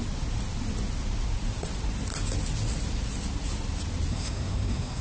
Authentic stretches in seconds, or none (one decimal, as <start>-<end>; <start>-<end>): 0.0-4.1